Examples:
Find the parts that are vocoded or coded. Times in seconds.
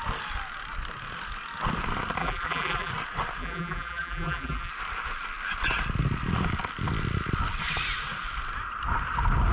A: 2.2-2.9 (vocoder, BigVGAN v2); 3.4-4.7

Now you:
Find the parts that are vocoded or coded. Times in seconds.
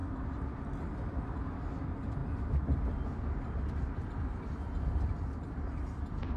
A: none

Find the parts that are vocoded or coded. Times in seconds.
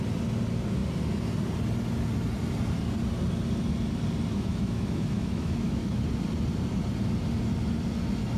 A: 4.3-6.0 (autoencoder, DAC-VAE)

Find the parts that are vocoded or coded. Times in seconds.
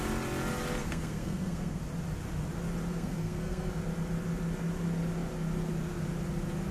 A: 0.8-1.8 (codec, SNAC); 2.9-3.7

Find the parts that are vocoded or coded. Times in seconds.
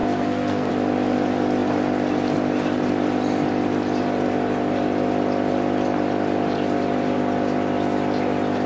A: 0.0-0.7 (codec, SNAC)